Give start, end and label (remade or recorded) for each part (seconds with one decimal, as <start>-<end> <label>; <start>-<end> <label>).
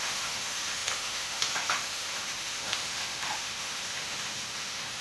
0.0-5.0 remade